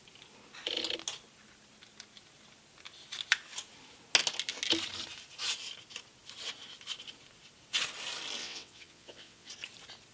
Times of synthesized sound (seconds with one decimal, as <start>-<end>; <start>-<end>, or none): 8.4-9.5